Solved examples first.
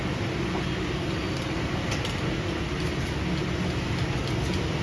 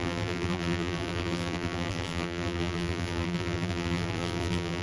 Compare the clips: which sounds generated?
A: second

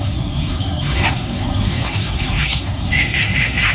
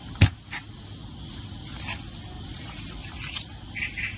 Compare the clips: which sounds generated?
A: first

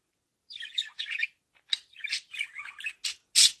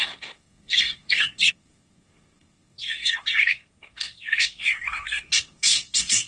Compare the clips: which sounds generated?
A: second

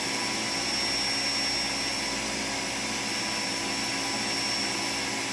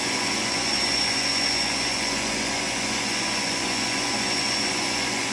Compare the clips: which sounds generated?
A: second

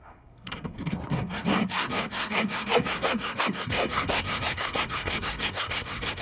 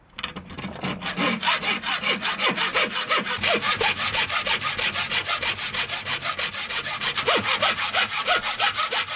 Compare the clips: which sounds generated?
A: first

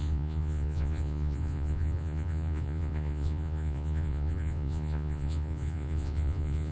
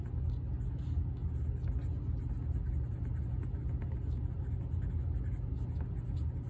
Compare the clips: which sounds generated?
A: first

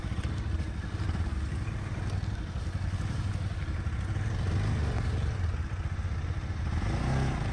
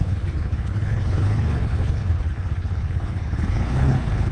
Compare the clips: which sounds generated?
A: second